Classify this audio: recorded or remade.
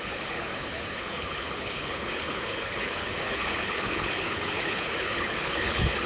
remade